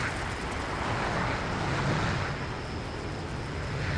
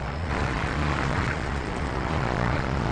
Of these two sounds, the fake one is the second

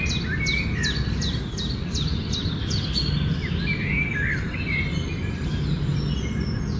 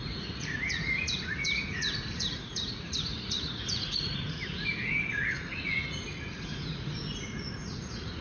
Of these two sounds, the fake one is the second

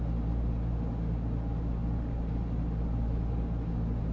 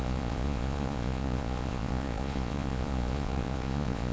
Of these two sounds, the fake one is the second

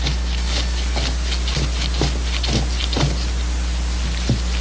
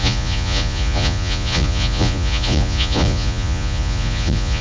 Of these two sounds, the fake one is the second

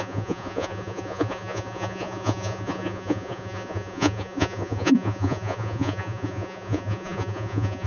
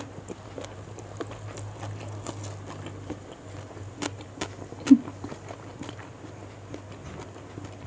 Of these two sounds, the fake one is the first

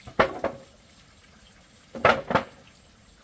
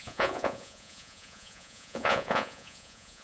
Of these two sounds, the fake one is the second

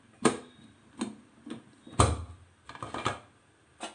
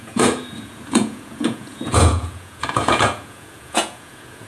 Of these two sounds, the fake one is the second